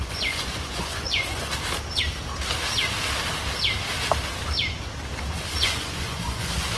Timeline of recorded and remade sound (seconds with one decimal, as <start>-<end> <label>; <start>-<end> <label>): 0.0-1.5 remade; 1.5-5.6 recorded; 5.6-6.8 remade